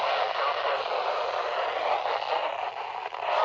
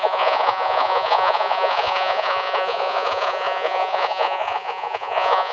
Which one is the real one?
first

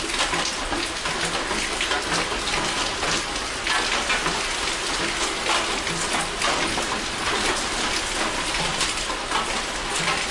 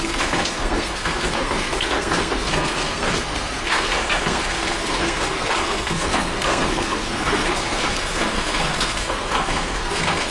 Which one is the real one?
first